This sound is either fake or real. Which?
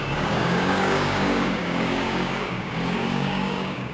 fake